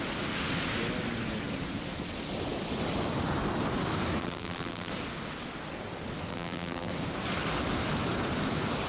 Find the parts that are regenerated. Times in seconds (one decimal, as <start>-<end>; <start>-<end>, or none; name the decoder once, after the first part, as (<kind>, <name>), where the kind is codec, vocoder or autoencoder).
4.2-4.9 (vocoder, BigVGAN v2); 6.3-6.9